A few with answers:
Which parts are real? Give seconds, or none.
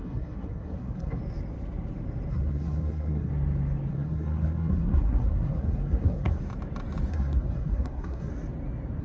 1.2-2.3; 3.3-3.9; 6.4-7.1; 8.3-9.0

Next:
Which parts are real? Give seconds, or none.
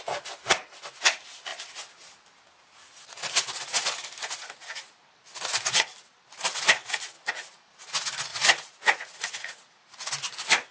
0.0-8.3; 10.0-10.7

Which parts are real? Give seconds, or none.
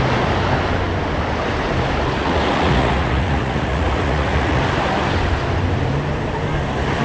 0.0-2.2; 4.6-7.0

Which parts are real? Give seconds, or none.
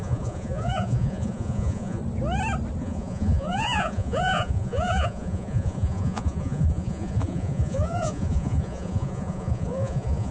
2.0-2.8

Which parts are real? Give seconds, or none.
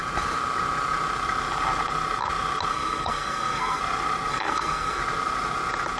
0.0-2.7; 3.8-4.3; 5.0-6.0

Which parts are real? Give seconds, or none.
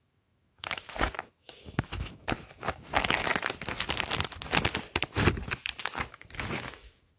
3.3-5.8